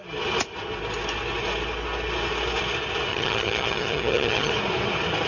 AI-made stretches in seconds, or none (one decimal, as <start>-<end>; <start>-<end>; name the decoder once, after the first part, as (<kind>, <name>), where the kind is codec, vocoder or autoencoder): 3.1-4.5 (vocoder, HiFi-GAN)